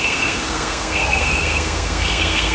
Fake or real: fake